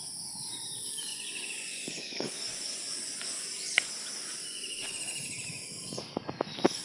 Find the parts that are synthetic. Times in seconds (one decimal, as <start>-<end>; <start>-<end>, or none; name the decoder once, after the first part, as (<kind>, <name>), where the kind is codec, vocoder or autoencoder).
1.1-3.9 (vocoder, Vocos); 4.5-5.0